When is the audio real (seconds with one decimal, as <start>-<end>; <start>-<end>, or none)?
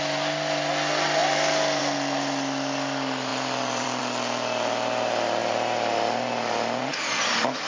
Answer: 0.0-3.3; 4.0-7.7